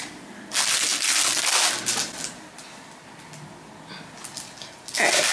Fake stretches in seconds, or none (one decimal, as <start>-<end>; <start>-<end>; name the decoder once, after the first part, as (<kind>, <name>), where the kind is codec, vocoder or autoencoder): none